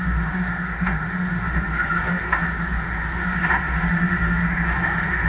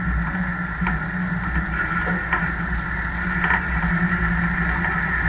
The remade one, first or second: first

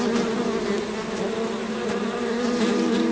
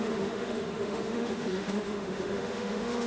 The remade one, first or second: second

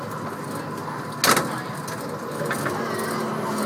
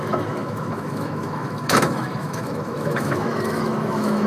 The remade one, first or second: second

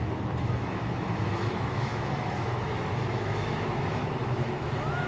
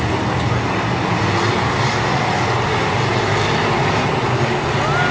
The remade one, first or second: first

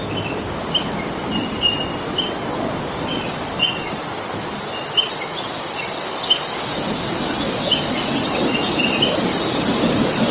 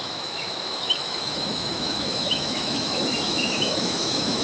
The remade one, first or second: second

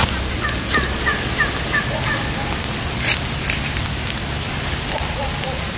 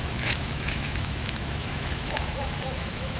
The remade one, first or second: second